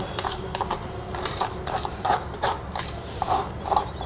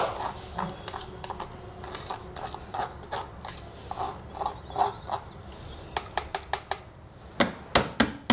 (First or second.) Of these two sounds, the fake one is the first